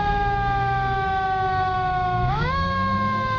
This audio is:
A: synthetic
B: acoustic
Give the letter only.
A